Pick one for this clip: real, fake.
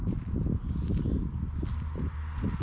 real